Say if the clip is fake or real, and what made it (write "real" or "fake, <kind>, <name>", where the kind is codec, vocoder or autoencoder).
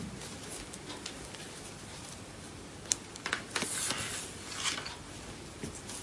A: real